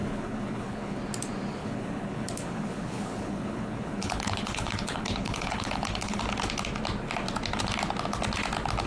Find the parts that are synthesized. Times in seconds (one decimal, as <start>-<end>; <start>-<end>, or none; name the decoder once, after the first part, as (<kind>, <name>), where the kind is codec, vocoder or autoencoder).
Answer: 0.0-1.0 (codec, HILCodec); 1.6-6.2